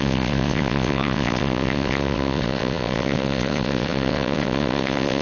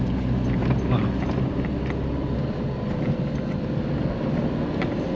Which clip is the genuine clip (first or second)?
second